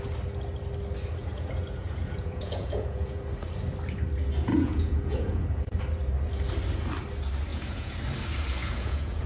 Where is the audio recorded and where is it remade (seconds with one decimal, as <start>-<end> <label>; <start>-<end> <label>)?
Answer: 0.0-1.2 recorded; 1.2-3.2 remade; 3.2-4.5 recorded; 4.5-5.8 remade; 5.8-7.5 recorded; 7.5-8.0 remade; 8.0-8.6 recorded; 8.6-9.3 remade